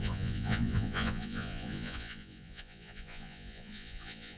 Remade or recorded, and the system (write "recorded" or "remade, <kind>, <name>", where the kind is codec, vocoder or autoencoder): remade, vocoder, Vocos